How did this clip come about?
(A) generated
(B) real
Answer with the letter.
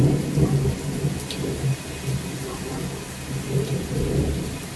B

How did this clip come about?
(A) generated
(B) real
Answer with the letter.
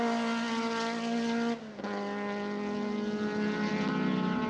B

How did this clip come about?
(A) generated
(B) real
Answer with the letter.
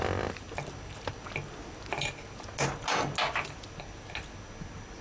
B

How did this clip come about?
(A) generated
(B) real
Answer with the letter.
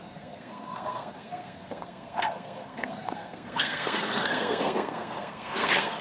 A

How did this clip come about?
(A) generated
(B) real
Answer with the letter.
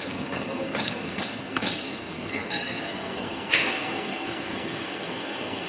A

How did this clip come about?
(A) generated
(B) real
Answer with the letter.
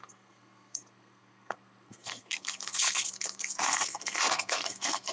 A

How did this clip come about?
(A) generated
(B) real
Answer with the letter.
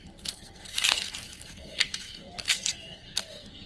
A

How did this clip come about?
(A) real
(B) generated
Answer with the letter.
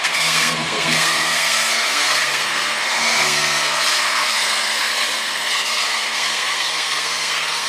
B